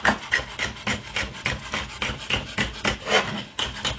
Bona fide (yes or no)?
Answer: yes